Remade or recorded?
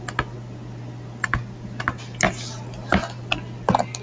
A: recorded